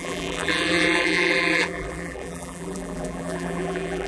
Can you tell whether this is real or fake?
fake